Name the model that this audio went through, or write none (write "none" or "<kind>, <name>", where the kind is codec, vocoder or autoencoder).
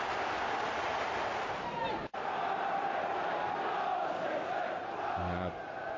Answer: none